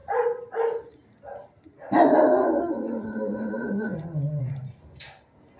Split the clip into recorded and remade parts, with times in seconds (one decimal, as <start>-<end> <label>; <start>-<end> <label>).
0.0-5.6 recorded